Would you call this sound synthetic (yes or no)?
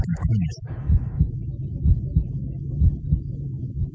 yes